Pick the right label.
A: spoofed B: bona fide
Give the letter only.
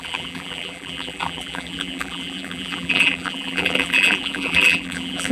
A